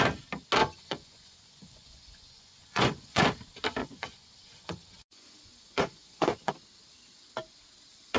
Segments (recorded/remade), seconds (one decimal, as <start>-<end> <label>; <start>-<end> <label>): 0.0-0.6 recorded; 0.6-3.2 remade; 3.2-3.8 recorded; 3.8-6.5 remade; 6.5-8.2 recorded